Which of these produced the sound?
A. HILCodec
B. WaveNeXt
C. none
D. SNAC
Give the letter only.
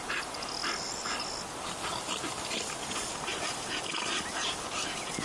C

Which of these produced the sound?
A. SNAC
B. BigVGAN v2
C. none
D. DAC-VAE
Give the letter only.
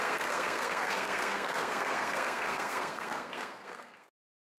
A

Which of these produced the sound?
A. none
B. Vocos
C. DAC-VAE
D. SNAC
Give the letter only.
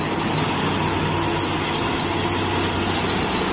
A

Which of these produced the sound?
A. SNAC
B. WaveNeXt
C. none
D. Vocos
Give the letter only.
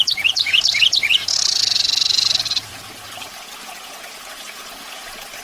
D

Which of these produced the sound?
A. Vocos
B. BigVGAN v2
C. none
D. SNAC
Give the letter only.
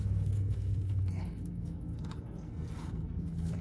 D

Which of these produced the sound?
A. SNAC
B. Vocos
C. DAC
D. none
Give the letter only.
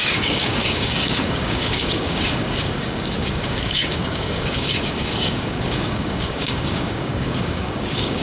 C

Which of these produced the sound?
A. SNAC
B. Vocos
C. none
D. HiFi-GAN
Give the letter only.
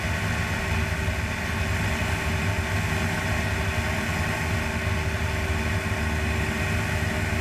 C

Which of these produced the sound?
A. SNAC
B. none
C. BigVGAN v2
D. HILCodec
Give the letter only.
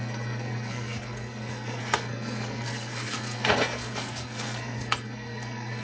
A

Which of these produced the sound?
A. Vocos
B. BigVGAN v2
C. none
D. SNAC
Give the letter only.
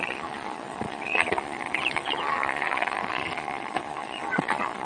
A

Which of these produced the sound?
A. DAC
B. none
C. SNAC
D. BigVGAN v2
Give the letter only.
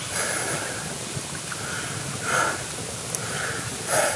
B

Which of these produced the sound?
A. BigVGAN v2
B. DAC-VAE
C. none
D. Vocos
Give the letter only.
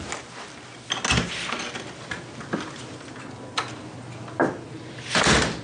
C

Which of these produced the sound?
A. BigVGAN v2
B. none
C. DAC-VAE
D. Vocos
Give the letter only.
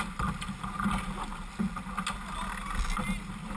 B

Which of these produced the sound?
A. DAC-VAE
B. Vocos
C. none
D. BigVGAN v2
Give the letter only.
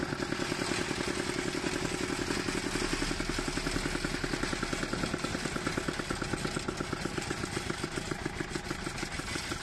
C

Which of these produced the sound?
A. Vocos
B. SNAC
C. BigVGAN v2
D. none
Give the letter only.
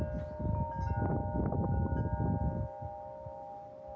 D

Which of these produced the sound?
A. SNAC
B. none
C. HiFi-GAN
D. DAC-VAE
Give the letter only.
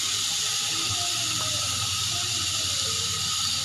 B